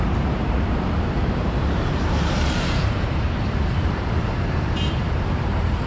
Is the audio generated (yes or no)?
yes